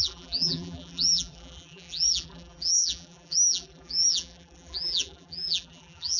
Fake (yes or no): yes